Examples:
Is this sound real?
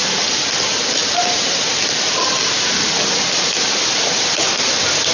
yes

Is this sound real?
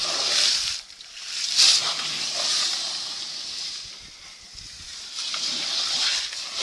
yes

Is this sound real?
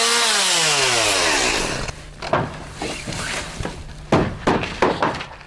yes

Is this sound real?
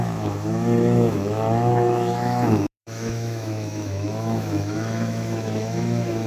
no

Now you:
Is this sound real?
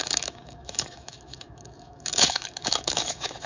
no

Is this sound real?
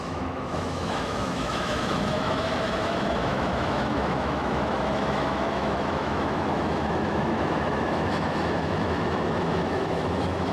no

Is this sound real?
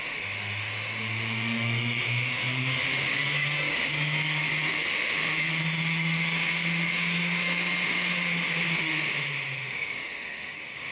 no